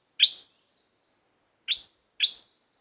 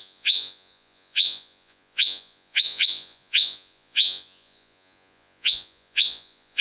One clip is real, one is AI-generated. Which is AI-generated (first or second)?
second